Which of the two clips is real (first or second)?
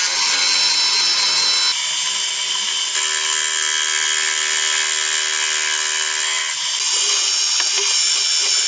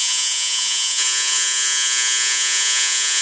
first